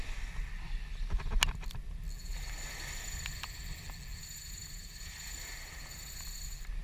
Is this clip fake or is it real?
real